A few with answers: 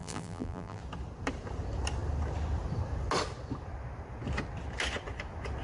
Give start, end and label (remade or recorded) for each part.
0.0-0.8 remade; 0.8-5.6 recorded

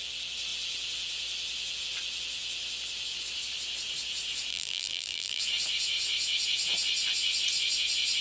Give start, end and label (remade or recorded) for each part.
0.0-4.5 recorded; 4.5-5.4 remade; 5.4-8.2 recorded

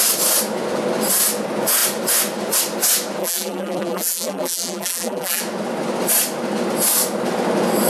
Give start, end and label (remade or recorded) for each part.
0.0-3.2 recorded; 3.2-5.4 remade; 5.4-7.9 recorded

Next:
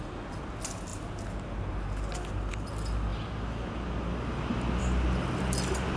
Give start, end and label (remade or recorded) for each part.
0.0-6.0 recorded

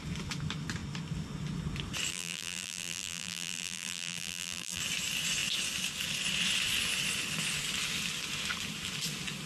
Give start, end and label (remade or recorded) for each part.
0.0-2.1 recorded; 2.1-4.8 remade; 4.8-9.5 recorded